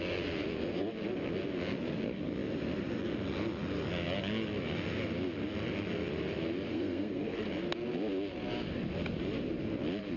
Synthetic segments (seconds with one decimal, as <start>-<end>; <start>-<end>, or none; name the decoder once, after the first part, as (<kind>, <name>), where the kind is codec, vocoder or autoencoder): 6.7-7.5 (codec, SNAC)